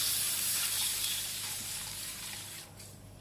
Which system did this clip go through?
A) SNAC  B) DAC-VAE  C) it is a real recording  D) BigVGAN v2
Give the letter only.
D